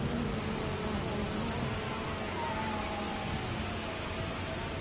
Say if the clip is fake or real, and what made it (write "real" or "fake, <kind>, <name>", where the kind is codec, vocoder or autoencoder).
real